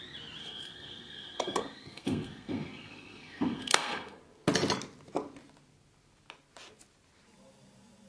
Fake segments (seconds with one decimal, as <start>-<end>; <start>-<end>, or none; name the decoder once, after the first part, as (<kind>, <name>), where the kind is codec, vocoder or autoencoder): 0.4-4.2 (codec, SNAC)